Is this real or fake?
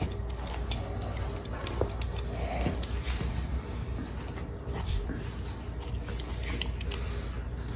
real